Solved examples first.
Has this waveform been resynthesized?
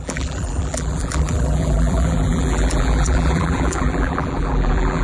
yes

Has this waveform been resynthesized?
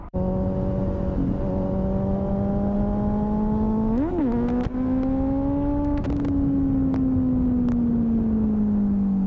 no